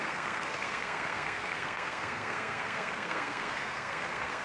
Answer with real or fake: fake